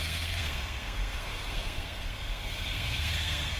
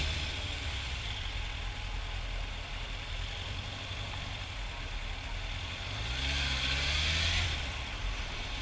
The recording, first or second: second